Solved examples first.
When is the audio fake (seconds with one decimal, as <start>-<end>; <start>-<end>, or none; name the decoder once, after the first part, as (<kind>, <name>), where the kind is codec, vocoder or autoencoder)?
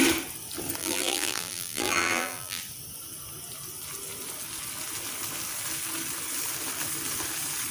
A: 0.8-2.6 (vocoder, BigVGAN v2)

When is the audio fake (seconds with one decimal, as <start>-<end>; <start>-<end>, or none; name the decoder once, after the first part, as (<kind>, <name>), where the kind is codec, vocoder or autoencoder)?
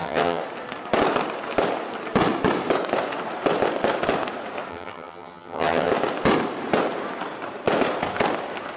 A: 0.0-0.4 (vocoder, HiFi-GAN); 4.7-5.9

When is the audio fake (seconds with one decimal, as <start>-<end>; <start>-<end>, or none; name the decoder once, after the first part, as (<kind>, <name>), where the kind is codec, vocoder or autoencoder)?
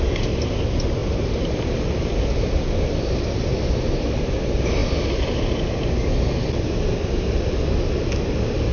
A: none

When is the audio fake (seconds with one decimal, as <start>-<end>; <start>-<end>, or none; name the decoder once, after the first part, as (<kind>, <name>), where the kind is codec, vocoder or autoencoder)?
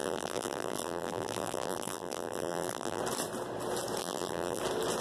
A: 0.0-3.0 (vocoder, BigVGAN v2); 4.0-4.6